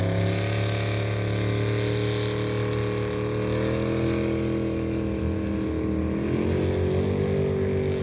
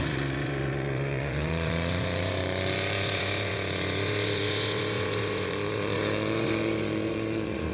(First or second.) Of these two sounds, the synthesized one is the second